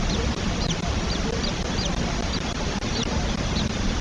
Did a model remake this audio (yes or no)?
no